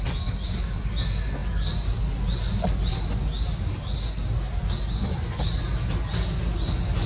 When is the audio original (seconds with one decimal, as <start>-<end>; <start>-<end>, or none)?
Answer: 0.0-7.1